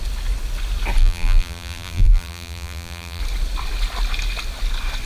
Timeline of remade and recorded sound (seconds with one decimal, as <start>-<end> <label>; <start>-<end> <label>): 0.0-1.0 recorded; 1.0-3.2 remade; 3.2-5.1 recorded